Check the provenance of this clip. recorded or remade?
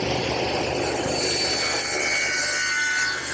recorded